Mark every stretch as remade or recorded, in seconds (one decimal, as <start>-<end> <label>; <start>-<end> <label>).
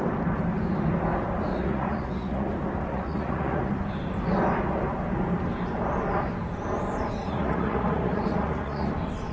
0.0-1.5 recorded; 1.5-2.5 remade; 2.5-2.9 recorded; 2.9-3.7 remade; 3.7-7.2 recorded; 7.2-8.9 remade; 8.9-9.3 recorded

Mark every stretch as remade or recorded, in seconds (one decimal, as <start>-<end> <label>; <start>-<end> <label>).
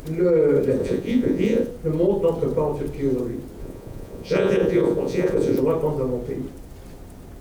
0.0-0.8 recorded; 0.8-1.7 remade; 1.7-3.6 recorded; 3.6-5.6 remade; 5.6-7.4 recorded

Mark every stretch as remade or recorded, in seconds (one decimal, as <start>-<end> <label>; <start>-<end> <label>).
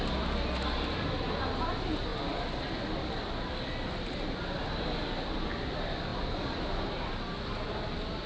0.0-8.3 recorded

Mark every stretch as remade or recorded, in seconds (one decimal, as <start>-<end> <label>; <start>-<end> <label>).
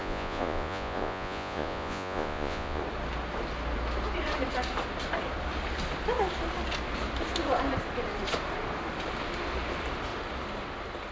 0.0-2.8 remade; 2.8-11.1 recorded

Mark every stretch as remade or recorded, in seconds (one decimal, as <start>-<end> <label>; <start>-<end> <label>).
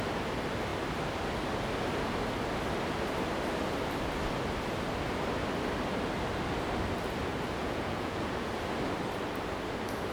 0.0-7.6 recorded; 7.6-8.5 remade; 8.5-10.1 recorded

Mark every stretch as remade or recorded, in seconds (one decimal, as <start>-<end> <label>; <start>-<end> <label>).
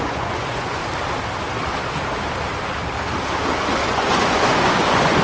0.0-0.8 remade; 0.8-3.9 recorded; 3.9-5.2 remade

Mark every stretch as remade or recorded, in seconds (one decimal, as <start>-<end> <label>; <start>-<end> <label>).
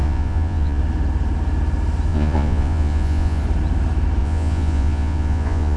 0.0-0.8 remade; 0.8-2.1 recorded; 2.1-3.4 remade; 3.4-4.2 recorded; 4.2-5.8 remade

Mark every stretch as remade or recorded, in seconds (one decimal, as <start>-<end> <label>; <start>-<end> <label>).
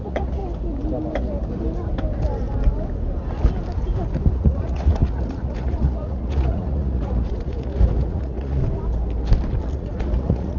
0.0-0.4 remade; 0.4-4.3 recorded; 4.3-8.6 remade; 8.6-9.7 recorded; 9.7-10.6 remade